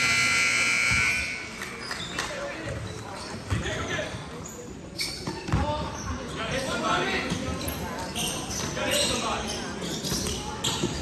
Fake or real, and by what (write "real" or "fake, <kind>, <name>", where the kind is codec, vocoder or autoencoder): real